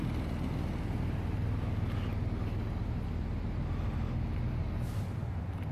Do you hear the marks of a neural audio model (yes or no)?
no